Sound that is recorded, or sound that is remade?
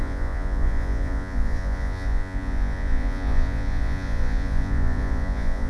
remade